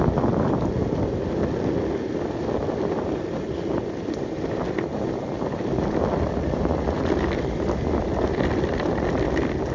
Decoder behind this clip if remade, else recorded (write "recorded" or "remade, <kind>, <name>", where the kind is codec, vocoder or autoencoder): recorded